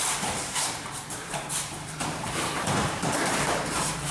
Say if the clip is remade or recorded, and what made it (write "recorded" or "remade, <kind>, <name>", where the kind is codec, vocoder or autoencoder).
remade, vocoder, BigVGAN v2